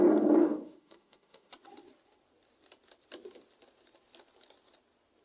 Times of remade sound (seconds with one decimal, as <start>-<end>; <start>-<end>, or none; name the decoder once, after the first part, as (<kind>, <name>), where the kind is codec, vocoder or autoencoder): 0.4-1.5 (autoencoder, DAC-VAE)